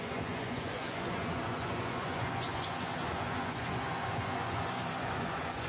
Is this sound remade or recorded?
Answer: remade